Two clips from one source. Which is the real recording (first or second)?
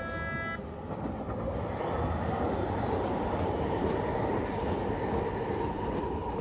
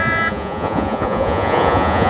first